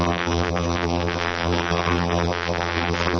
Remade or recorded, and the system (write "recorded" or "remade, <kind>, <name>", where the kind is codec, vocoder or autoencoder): remade, vocoder, BigVGAN v2